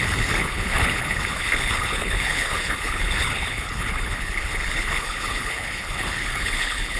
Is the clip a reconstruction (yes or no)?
yes